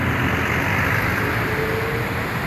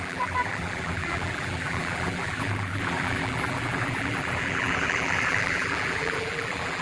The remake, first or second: second